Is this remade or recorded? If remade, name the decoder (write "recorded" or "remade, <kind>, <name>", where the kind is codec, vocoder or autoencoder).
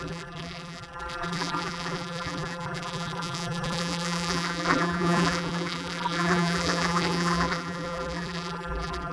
remade, vocoder, BigVGAN v2